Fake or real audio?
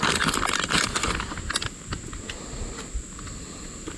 real